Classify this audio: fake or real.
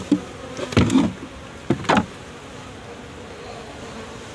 real